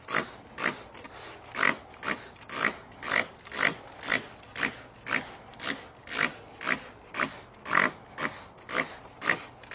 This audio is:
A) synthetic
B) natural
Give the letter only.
B